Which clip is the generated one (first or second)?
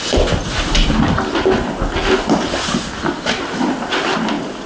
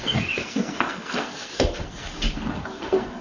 second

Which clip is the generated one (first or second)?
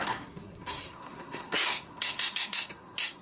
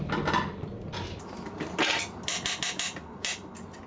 first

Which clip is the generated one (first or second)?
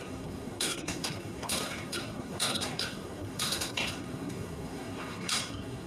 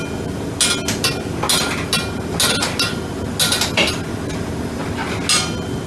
first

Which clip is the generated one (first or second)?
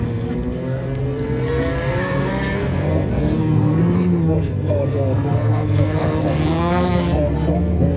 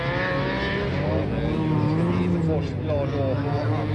first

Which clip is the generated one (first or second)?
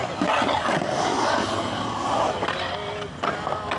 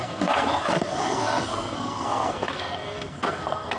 second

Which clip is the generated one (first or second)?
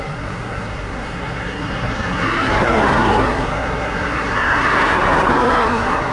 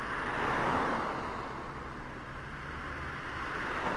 first